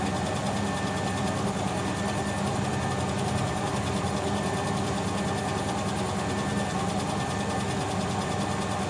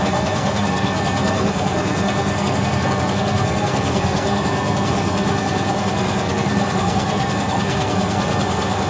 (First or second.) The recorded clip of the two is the first